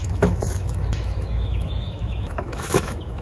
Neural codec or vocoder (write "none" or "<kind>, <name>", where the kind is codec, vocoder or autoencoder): autoencoder, DAC-VAE